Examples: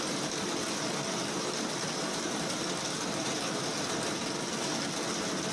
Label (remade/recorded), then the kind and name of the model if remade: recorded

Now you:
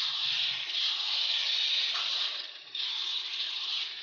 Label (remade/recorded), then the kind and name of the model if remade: remade, vocoder, BigVGAN v2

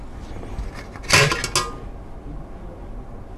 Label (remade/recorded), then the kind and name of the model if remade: recorded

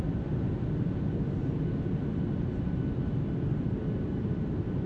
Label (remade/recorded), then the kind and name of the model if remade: recorded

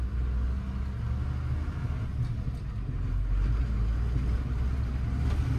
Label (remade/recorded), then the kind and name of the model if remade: recorded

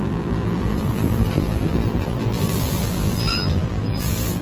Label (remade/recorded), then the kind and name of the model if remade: remade, vocoder, BigVGAN v2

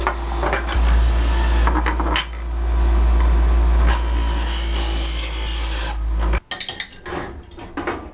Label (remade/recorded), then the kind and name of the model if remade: recorded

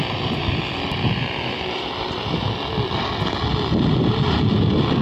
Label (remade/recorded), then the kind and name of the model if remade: recorded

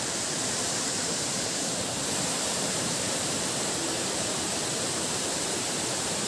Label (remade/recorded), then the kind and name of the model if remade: remade, vocoder, BigVGAN v2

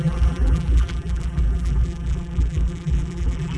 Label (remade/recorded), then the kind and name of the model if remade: remade, vocoder, BigVGAN v2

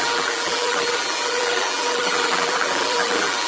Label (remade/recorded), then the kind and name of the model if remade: remade, vocoder, BigVGAN v2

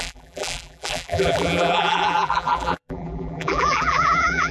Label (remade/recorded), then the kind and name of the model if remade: remade, vocoder, BigVGAN v2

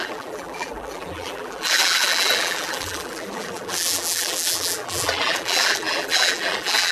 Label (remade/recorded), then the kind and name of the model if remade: remade, vocoder, BigVGAN v2